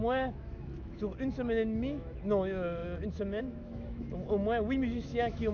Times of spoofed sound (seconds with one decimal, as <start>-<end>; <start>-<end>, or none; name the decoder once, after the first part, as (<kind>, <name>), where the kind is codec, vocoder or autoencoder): 0.0-5.5 (autoencoder, DAC-VAE)